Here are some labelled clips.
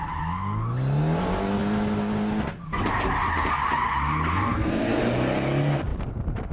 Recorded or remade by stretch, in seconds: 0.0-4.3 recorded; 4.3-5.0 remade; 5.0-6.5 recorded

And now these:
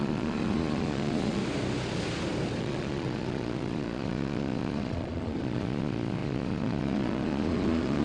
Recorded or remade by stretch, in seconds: 0.0-1.4 remade; 1.4-2.6 recorded; 2.6-8.0 remade

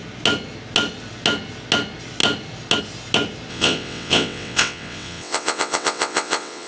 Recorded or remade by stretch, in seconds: 0.0-3.5 recorded; 3.5-6.7 remade

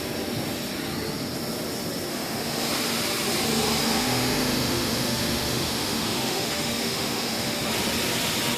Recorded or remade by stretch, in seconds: 0.0-2.1 recorded; 2.1-2.7 remade; 2.7-3.8 recorded; 3.8-7.7 remade; 7.7-8.6 recorded